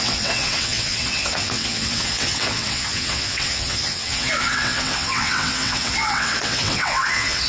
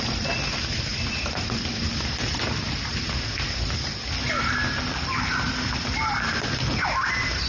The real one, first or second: second